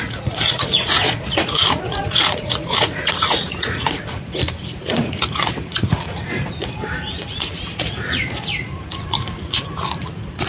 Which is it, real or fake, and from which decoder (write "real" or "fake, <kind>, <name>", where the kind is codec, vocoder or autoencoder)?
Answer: fake, vocoder, Vocos